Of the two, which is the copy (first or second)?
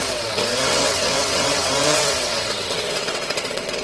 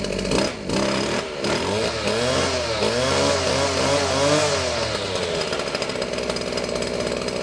first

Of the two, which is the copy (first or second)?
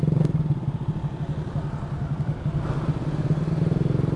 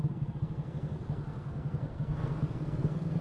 second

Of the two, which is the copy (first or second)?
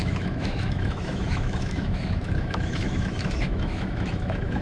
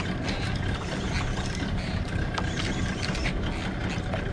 first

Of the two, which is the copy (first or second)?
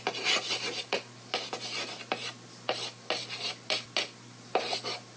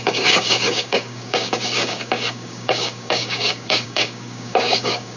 second